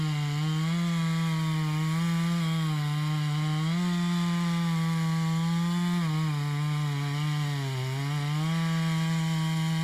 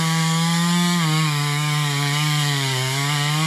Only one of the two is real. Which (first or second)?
first